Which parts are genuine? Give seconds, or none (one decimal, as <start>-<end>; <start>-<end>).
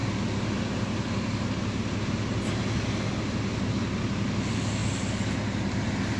0.0-6.2